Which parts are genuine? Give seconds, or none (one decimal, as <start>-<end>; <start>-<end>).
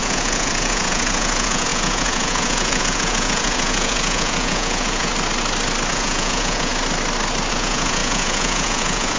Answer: 5.1-5.9; 6.7-7.5